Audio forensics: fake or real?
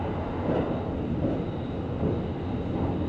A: real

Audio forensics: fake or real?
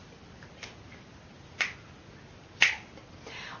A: real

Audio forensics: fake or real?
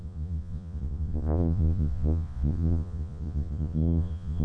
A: fake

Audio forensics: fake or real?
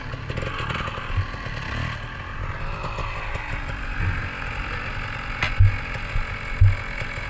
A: real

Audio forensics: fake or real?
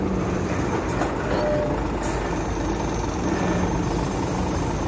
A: real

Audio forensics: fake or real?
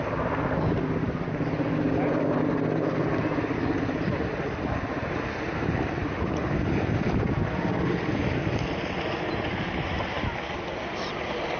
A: real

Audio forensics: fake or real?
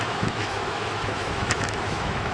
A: fake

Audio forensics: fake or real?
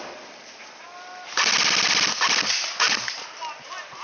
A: real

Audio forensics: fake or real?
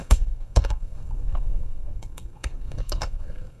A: fake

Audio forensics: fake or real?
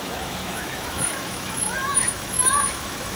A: fake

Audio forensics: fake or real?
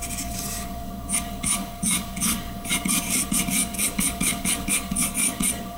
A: fake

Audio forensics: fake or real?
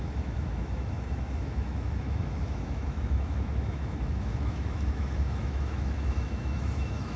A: fake